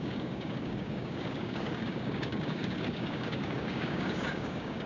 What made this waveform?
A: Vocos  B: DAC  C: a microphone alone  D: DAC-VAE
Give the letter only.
B